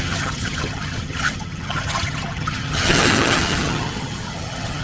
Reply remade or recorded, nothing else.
remade